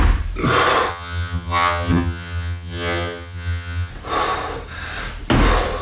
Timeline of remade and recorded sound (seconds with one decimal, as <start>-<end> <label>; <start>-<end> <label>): 0.0-0.9 recorded; 0.9-3.9 remade; 3.9-5.8 recorded